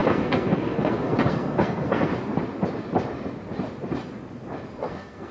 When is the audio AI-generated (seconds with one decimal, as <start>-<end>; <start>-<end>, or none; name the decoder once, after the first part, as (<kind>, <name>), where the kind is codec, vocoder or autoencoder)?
0.0-2.1 (codec, SNAC); 4.7-5.3